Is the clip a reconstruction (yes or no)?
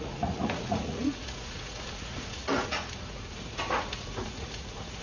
yes